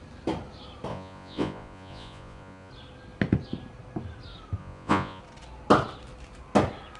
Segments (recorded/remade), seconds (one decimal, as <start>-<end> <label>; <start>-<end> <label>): 0.0-0.9 recorded; 0.9-2.7 remade; 2.7-4.6 recorded; 4.6-5.2 remade; 5.2-7.0 recorded